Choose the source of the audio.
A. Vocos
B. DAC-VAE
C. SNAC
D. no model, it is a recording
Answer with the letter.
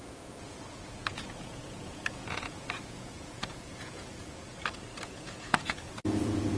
A